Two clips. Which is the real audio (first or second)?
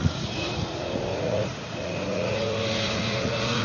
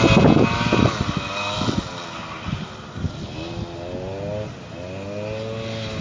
second